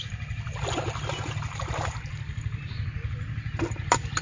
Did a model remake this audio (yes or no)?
no